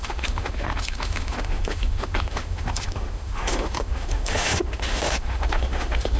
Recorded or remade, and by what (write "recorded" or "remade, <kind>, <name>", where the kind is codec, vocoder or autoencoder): remade, autoencoder, DAC-VAE